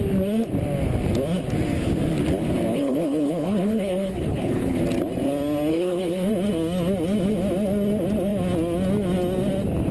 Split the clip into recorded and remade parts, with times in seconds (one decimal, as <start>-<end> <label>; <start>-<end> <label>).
0.0-2.7 recorded; 2.7-4.8 remade; 4.8-5.7 recorded; 5.7-6.3 remade; 6.3-9.9 recorded